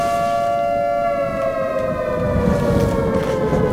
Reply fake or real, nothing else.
real